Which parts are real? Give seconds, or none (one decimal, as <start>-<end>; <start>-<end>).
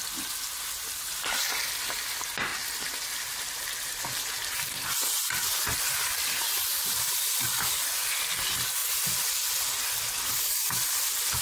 0.0-11.4